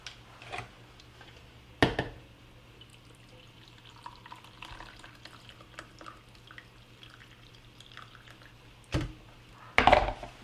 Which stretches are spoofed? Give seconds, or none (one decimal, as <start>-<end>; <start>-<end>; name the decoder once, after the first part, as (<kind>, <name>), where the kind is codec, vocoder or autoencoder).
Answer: none